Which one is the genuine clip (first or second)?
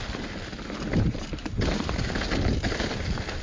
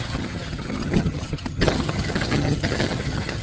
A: first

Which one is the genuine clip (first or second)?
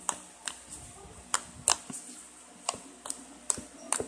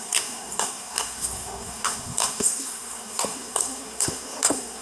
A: first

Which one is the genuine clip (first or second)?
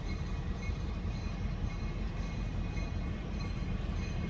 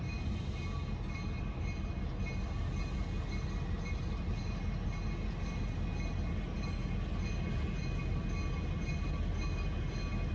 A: second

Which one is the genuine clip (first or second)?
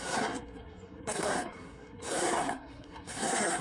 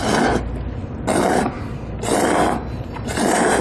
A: second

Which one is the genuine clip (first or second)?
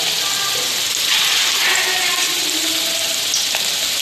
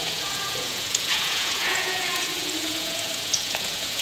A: first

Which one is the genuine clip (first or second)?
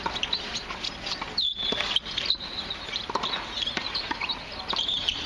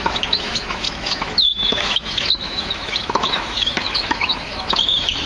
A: first